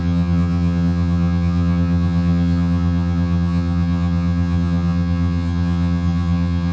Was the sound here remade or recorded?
remade